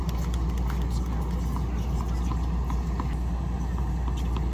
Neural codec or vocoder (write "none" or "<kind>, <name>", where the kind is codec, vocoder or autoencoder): none